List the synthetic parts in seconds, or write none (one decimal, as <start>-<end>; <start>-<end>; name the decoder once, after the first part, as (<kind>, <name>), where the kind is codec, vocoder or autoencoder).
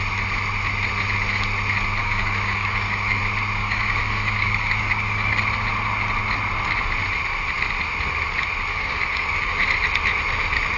2.0-3.2 (codec, DAC); 3.6-5.4; 8.7-9.6